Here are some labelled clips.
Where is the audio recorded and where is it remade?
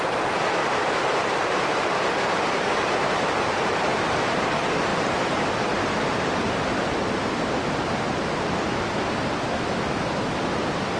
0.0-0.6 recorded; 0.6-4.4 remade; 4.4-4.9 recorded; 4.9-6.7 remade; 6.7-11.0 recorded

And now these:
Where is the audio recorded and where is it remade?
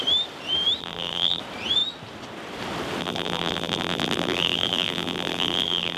0.0-0.8 recorded; 0.8-1.4 remade; 1.4-3.0 recorded; 3.0-6.0 remade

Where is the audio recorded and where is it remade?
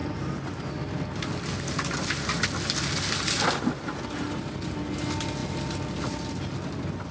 0.0-0.5 remade; 0.5-7.1 recorded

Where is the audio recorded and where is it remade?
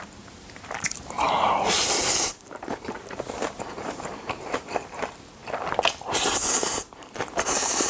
0.0-5.4 remade; 5.4-6.5 recorded; 6.5-7.9 remade